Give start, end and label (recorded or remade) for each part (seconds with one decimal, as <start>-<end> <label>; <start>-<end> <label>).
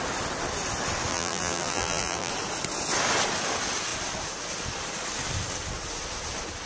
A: 0.0-1.1 recorded; 1.1-2.3 remade; 2.3-6.7 recorded